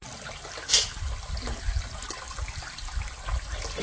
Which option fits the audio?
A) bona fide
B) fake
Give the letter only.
A